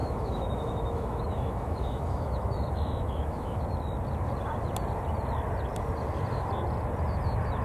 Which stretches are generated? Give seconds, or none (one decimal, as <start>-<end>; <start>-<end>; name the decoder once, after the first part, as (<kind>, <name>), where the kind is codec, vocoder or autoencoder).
0.0-3.6 (autoencoder, DAC-VAE)